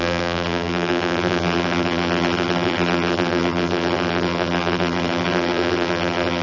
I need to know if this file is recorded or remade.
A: remade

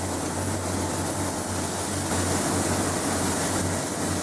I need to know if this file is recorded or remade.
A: recorded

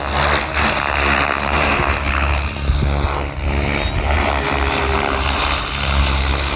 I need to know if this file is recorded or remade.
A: recorded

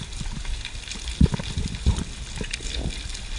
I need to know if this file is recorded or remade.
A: recorded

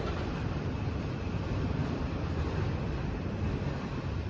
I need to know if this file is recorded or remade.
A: remade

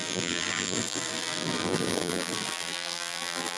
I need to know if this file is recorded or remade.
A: remade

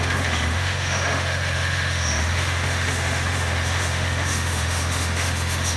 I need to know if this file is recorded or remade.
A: remade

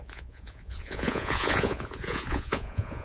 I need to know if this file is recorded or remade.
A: remade